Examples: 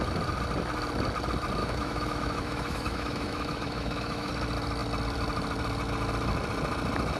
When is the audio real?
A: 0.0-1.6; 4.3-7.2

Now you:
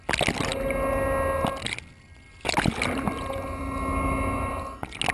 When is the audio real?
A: 0.0-5.1